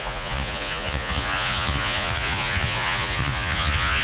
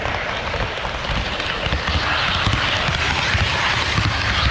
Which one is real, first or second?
second